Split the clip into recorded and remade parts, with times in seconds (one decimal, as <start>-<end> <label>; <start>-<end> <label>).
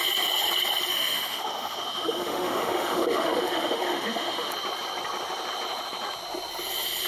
0.0-0.9 recorded; 0.9-4.5 remade; 4.5-7.1 recorded